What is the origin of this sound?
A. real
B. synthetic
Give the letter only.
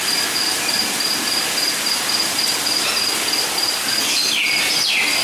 A